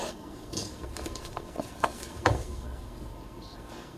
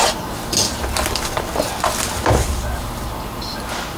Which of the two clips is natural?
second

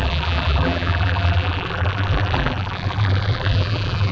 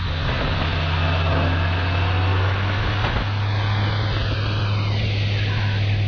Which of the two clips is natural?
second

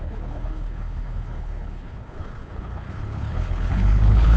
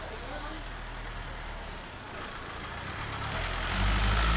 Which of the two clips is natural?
second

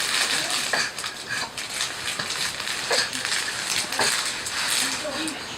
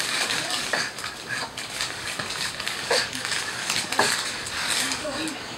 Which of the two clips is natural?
first